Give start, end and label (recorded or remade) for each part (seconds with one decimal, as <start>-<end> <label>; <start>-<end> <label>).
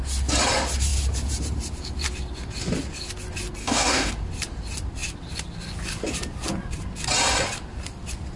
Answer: 0.0-3.6 recorded; 3.6-4.1 remade; 4.1-8.4 recorded